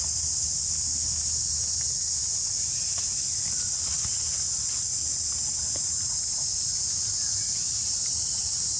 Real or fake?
real